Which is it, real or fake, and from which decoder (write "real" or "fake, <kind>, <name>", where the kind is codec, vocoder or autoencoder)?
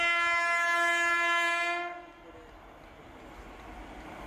real